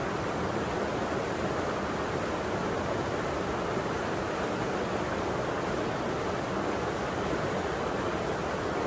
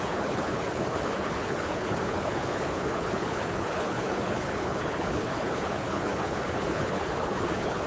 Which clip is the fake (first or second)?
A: second